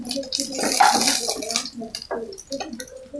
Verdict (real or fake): real